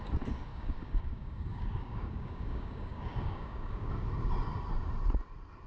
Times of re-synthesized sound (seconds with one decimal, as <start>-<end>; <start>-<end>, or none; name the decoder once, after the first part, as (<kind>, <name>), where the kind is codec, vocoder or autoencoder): 0.5-3.9 (codec, DAC)